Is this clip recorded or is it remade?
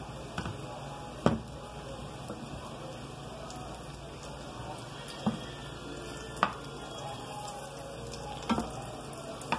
recorded